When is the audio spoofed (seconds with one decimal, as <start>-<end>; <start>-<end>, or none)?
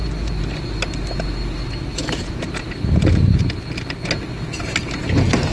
0.0-1.2; 1.9-3.4